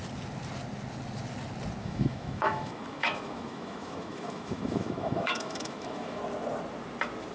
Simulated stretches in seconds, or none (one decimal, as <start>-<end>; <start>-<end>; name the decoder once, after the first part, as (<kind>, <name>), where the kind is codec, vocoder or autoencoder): 1.8-6.2 (autoencoder, DAC-VAE)